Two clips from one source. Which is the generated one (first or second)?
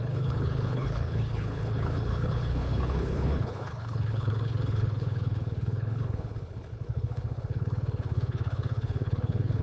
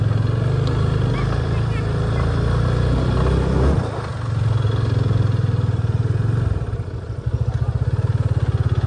first